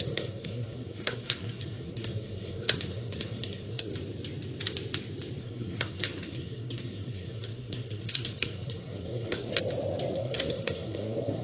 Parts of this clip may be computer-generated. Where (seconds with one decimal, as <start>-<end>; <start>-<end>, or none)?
0.0-3.9; 5.4-9.5; 10.1-11.4